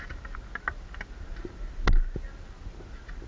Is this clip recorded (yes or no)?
yes